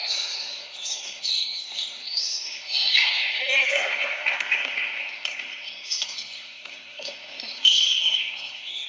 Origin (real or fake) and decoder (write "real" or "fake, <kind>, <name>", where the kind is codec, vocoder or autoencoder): fake, codec, SNAC